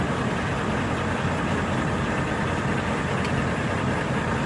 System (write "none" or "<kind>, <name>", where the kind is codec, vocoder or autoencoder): vocoder, BigVGAN v2